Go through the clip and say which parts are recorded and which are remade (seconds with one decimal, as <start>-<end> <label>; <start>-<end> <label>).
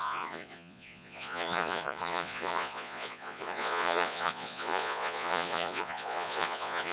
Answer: 0.0-6.9 remade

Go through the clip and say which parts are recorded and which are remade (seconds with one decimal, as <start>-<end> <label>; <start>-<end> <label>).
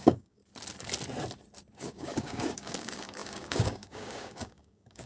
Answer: 0.0-0.4 remade; 0.4-1.8 recorded; 1.8-5.1 remade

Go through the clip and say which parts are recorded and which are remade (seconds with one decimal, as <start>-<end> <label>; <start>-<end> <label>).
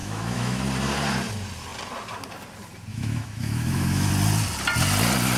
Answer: 0.0-0.6 remade; 0.6-2.9 recorded; 2.9-4.1 remade; 4.1-5.4 recorded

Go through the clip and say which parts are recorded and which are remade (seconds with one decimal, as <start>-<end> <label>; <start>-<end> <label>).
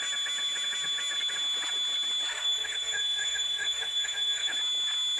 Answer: 0.0-2.3 recorded; 2.3-4.5 remade; 4.5-5.2 recorded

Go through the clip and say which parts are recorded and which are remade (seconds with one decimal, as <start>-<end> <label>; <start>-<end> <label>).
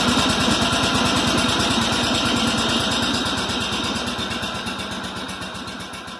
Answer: 0.0-6.2 recorded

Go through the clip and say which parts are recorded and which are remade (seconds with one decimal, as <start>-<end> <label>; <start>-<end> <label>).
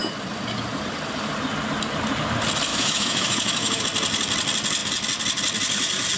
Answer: 0.0-2.7 recorded; 2.7-3.8 remade; 3.8-6.2 recorded